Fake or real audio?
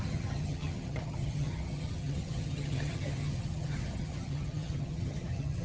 fake